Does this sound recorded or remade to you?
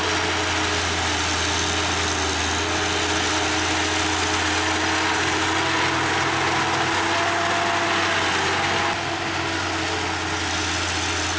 recorded